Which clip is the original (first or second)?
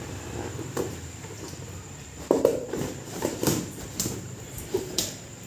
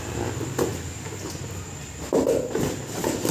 second